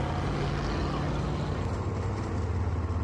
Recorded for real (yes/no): yes